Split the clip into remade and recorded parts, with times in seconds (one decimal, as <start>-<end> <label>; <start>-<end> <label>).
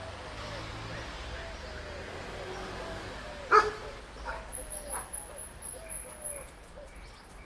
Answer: 0.0-7.5 recorded